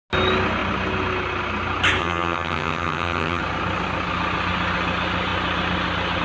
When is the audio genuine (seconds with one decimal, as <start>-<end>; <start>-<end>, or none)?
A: 0.0-2.0; 3.4-6.2